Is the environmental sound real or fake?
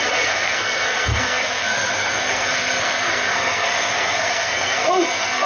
fake